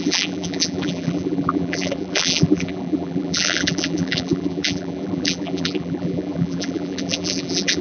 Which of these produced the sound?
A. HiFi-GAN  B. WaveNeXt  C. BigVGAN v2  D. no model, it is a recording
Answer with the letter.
C